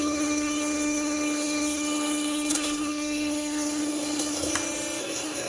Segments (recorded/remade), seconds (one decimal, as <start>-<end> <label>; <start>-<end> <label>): 0.0-4.5 remade; 4.5-5.0 recorded; 5.0-5.5 remade

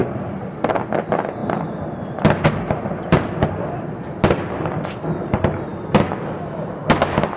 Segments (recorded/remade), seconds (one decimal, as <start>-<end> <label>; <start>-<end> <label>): 0.0-0.7 remade; 0.7-1.4 recorded; 1.4-3.6 remade; 3.6-7.4 recorded

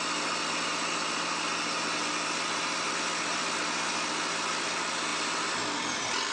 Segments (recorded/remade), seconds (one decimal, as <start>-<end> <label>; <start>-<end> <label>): 0.0-6.3 recorded